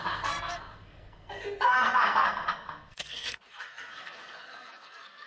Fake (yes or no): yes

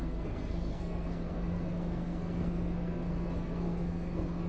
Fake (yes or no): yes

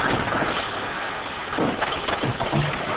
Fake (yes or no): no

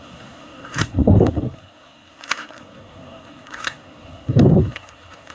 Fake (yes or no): yes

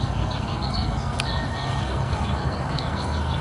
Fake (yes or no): yes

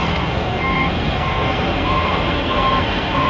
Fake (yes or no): yes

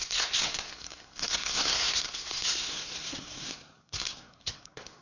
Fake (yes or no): yes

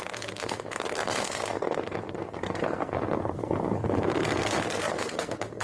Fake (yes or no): yes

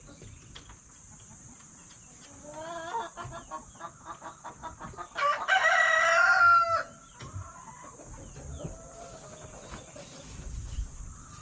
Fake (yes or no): no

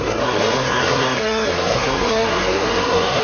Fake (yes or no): yes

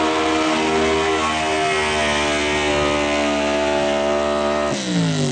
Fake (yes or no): no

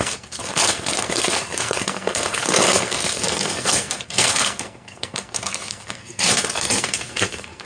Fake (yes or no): yes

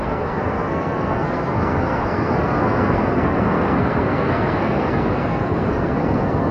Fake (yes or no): yes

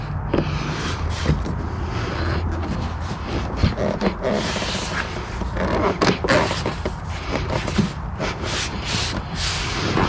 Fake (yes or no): no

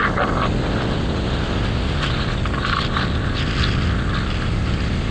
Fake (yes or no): no